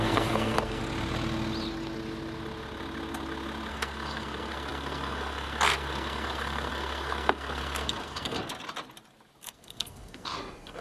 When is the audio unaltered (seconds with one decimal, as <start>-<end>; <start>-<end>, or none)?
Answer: 0.8-3.7; 8.5-9.4